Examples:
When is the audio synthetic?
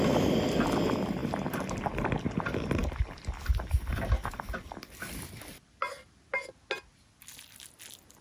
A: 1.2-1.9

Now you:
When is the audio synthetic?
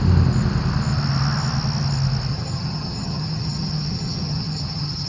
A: 2.3-5.1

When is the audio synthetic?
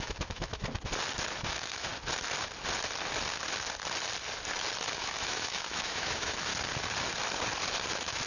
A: 0.0-0.6; 1.4-1.9; 4.9-6.5; 7.9-8.3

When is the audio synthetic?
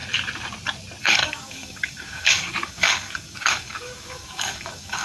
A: 1.0-5.0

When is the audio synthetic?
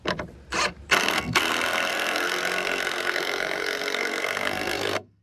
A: 1.0-1.5; 1.9-5.2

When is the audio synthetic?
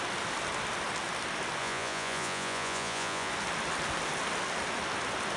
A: 1.6-3.3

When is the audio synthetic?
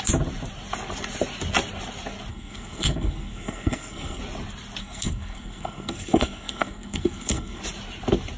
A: 2.3-4.2; 4.8-7.6